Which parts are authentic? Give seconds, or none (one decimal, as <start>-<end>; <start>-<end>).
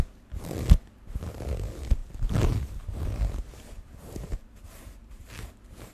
0.0-2.0; 5.5-5.9